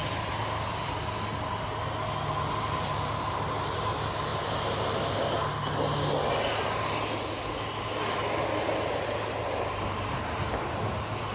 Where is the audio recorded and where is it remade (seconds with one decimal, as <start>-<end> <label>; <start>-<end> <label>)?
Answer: 0.0-11.3 recorded